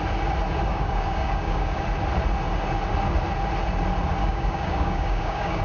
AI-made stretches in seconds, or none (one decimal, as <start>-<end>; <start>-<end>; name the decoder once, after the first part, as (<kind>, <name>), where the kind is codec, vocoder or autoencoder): 0.7-1.8 (codec, DAC); 4.2-5.6